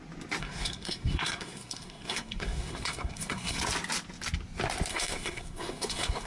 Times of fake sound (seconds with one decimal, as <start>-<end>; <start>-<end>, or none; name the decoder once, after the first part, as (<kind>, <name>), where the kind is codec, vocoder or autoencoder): 0.4-3.6 (codec, SNAC); 4.9-6.3